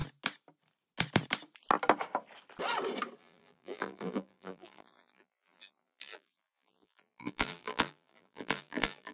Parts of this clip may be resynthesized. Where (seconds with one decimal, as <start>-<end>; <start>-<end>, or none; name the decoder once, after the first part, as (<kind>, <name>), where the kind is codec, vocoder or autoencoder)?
3.2-9.1 (vocoder, BigVGAN v2)

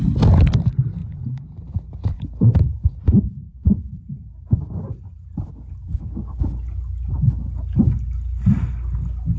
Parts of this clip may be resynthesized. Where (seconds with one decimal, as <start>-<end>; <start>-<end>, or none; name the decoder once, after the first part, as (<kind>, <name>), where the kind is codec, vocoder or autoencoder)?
1.0-5.5 (vocoder, BigVGAN v2)